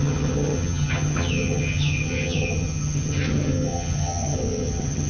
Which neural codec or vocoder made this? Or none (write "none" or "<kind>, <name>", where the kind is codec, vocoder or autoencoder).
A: vocoder, HiFi-GAN